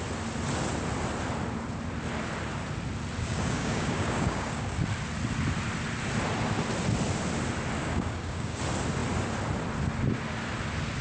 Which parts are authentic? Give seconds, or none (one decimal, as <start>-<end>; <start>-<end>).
0.0-3.2; 4.8-7.8; 8.6-11.0